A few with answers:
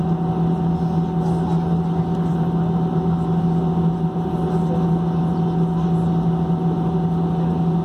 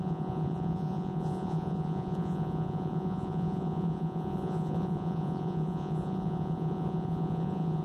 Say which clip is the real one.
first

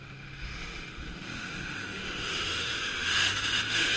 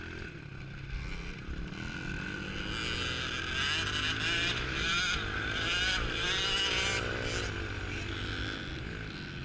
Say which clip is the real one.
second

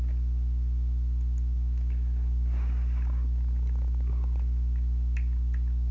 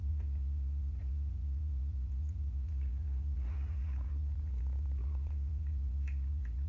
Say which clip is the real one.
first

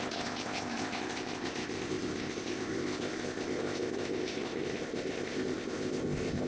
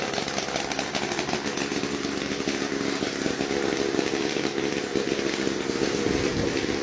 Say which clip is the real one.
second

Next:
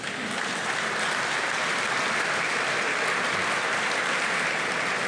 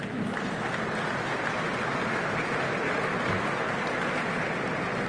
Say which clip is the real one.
second